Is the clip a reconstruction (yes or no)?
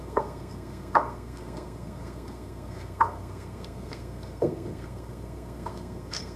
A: yes